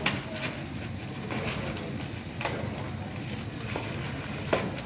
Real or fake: real